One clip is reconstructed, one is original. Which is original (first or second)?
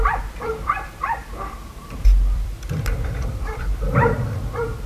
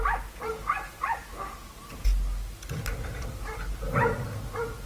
second